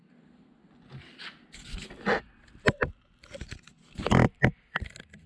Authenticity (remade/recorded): recorded